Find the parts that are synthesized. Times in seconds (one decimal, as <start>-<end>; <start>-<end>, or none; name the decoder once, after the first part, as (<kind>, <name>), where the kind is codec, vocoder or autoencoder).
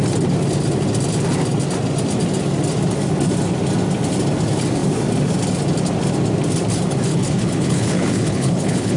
7.1-9.0 (codec, HILCodec)